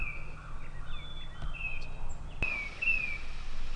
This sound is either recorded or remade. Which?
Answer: recorded